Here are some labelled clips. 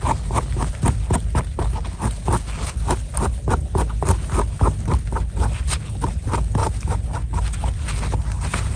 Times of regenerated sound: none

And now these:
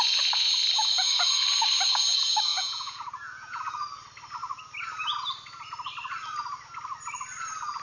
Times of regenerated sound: 2.5-3.6 (vocoder, Vocos)